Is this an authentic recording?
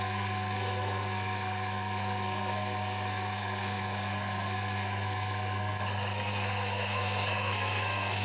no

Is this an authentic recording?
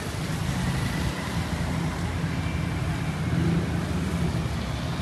yes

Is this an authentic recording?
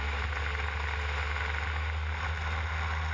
yes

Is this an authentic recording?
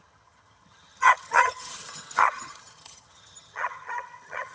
no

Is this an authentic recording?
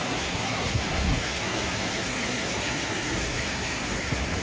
no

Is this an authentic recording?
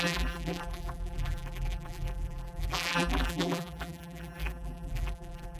no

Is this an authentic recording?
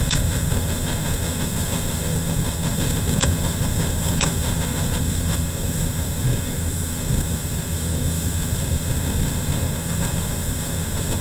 no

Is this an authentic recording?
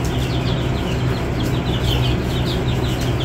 yes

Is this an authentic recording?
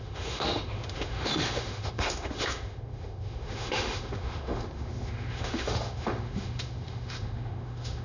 no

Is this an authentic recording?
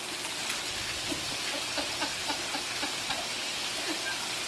yes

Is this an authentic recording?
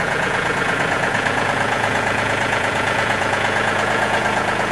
no